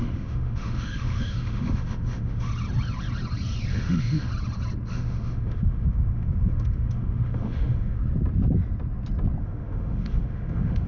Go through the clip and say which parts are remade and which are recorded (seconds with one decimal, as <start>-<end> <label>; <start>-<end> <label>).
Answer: 0.0-2.5 remade; 2.5-3.7 recorded; 3.7-4.3 remade; 4.3-4.9 recorded; 4.9-8.0 remade; 8.0-9.4 recorded; 9.4-10.9 remade